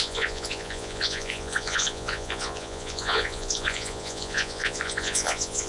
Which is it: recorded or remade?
remade